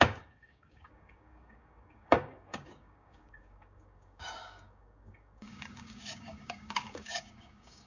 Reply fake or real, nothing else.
fake